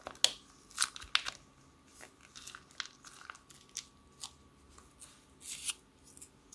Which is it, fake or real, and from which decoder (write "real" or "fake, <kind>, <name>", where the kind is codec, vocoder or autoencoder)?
real